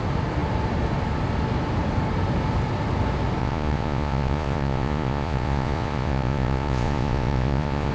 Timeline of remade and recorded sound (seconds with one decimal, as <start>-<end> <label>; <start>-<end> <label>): 0.0-3.4 recorded; 3.4-7.9 remade